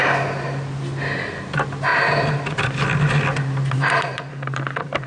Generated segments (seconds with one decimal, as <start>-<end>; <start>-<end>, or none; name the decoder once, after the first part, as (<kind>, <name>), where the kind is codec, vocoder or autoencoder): 1.9-5.1 (vocoder, BigVGAN v2)